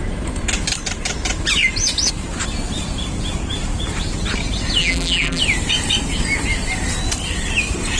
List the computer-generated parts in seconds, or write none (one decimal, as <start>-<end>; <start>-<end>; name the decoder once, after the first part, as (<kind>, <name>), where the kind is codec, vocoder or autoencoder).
4.8-5.4 (vocoder, BigVGAN v2)